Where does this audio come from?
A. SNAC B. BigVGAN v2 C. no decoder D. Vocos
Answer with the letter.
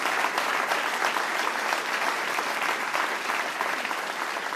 C